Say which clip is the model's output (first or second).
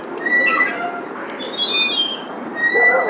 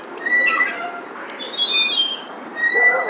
second